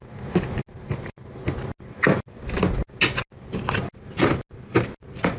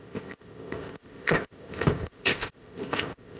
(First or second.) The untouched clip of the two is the first